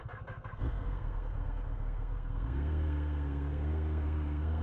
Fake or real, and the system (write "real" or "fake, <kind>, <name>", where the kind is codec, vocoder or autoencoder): fake, codec, SNAC